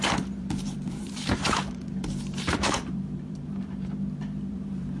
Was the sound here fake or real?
fake